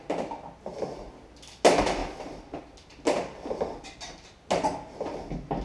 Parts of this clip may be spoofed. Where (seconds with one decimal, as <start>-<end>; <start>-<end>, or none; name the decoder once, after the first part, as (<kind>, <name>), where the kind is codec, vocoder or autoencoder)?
none